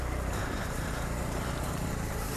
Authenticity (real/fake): fake